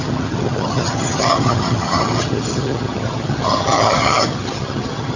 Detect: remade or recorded remade